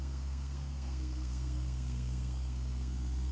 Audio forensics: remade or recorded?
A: remade